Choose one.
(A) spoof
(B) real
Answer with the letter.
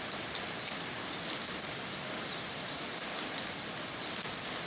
A